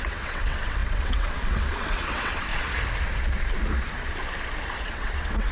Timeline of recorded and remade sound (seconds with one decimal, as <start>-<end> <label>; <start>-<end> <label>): 0.0-2.5 remade; 2.5-4.8 recorded; 4.8-5.5 remade